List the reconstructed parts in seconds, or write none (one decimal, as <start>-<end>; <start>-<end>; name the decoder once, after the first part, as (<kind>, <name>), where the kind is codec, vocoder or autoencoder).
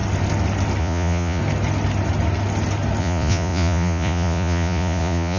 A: 0.8-1.4 (vocoder, Vocos); 3.0-5.4